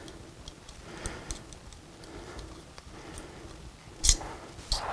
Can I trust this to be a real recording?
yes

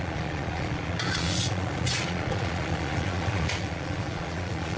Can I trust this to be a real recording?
no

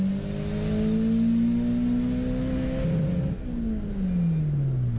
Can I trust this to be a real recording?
yes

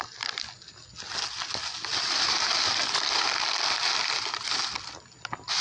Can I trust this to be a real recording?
yes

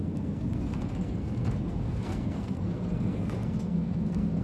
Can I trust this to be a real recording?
no